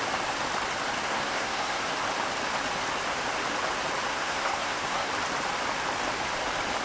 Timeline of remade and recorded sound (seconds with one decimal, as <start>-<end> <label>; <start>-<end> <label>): 0.0-1.1 recorded; 1.1-1.8 remade; 1.8-4.1 recorded; 4.1-5.1 remade; 5.1-6.8 recorded